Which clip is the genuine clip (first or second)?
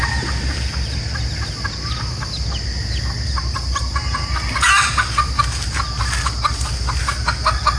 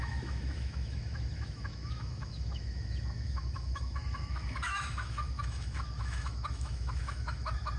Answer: first